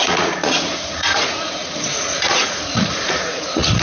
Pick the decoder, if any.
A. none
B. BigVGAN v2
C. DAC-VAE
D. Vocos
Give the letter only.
D